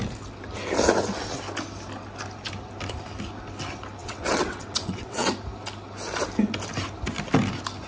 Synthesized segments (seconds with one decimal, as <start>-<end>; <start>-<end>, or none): 4.0-5.3